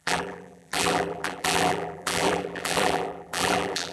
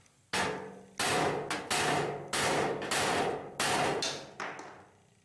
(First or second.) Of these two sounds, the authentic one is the second